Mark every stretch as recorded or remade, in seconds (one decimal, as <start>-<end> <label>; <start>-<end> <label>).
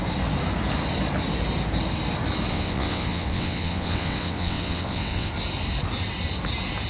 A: 0.0-2.5 recorded; 2.5-5.3 remade; 5.3-6.9 recorded